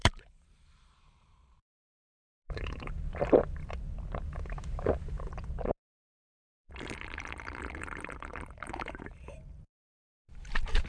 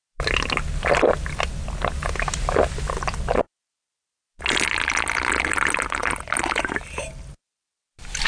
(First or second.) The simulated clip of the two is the first